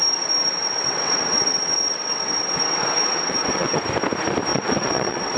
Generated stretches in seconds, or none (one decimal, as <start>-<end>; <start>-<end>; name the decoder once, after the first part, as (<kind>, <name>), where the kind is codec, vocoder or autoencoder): 0.6-3.8 (vocoder, WaveNeXt); 4.5-5.4